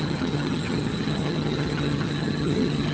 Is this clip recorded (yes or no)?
no